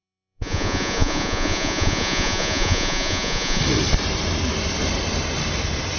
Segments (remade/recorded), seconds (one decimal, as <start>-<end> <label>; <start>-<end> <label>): 0.0-3.6 remade; 3.6-6.0 recorded